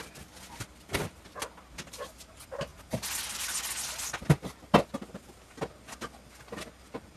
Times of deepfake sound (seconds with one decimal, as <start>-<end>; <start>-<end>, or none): none